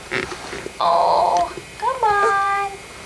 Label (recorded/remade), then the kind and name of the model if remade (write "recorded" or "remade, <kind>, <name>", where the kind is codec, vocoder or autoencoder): remade, vocoder, BigVGAN v2